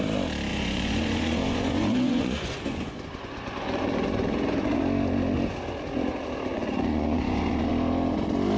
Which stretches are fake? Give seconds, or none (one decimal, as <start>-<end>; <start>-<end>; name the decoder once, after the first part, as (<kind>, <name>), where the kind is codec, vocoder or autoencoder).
0.5-4.8 (vocoder, Vocos); 6.5-7.7